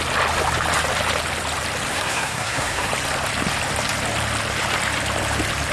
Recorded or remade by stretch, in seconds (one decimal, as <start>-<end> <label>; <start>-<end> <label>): 0.0-1.9 recorded; 1.9-2.9 remade; 2.9-5.7 recorded